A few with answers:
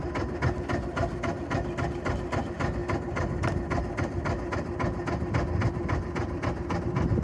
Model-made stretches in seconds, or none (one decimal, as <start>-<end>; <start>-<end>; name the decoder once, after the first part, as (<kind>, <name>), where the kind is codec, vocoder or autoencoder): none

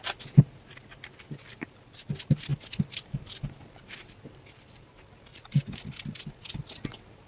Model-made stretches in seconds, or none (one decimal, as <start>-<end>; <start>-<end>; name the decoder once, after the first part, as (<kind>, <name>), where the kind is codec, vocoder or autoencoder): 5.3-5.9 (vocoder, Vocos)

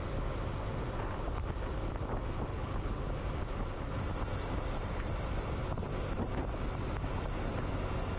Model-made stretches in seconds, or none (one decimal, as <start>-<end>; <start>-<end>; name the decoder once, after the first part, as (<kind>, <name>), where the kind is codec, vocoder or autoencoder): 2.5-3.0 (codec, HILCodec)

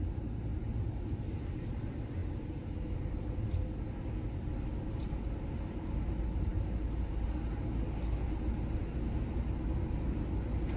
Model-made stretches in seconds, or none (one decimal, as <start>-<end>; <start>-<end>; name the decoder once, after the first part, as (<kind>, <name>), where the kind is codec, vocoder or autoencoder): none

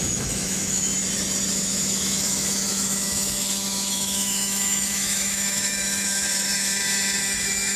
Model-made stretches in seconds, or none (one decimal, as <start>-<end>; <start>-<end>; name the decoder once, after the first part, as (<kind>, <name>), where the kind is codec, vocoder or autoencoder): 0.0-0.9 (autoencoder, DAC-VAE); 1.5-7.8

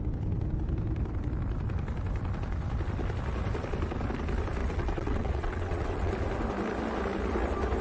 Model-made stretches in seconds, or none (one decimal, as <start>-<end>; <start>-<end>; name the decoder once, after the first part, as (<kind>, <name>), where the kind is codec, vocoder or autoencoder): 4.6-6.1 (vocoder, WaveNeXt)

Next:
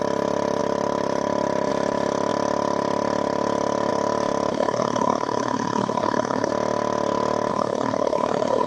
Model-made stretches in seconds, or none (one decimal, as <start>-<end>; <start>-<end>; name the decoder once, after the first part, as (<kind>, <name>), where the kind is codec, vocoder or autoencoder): 4.5-6.5 (codec, SNAC); 7.5-8.7

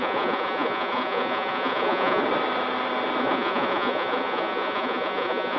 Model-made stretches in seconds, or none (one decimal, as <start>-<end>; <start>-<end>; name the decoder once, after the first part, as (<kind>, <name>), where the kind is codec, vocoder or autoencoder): 0.0-2.2 (vocoder, Vocos); 3.2-5.6